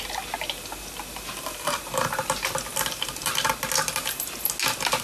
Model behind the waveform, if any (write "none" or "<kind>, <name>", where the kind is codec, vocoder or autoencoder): none